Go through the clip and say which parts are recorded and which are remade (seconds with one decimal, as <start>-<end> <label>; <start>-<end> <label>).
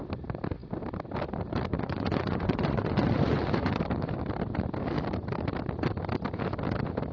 0.0-1.7 recorded; 1.7-3.8 remade; 3.8-7.1 recorded